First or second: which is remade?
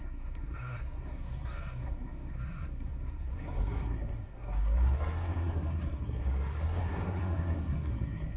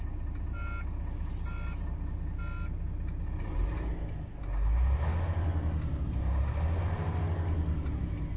first